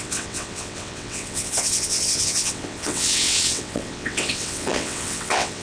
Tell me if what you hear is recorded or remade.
remade